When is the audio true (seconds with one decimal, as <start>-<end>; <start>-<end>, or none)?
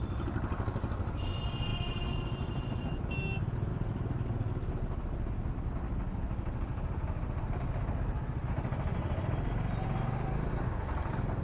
0.0-11.4